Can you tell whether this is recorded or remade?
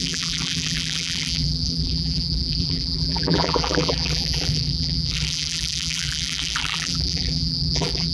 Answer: remade